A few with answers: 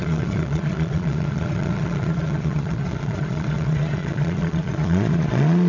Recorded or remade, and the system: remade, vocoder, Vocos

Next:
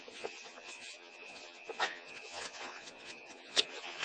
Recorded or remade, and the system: remade, vocoder, Vocos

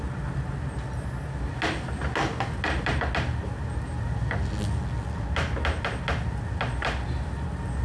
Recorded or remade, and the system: recorded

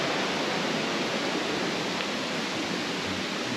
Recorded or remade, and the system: recorded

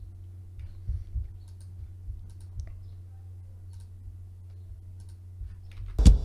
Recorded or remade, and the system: recorded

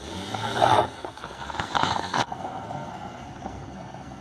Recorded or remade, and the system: remade, codec, SNAC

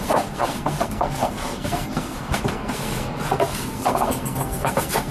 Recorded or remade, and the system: remade, codec, SNAC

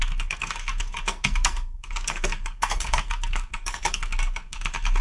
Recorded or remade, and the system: remade, codec, SNAC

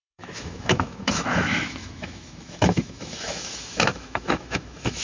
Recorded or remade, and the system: remade, autoencoder, DAC-VAE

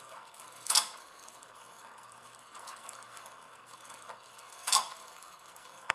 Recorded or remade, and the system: remade, codec, SNAC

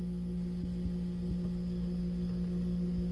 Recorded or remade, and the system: recorded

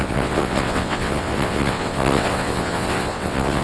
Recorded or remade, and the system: remade, vocoder, WaveNeXt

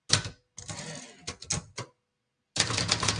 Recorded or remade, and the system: recorded